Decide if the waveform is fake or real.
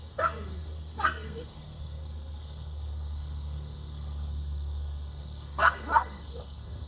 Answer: fake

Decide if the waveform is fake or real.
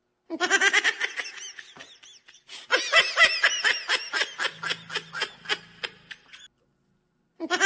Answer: real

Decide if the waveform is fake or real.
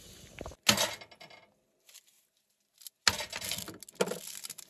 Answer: real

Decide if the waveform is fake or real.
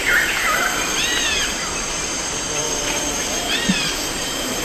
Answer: fake